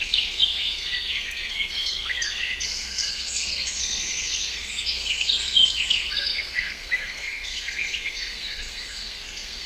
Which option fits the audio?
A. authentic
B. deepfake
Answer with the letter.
B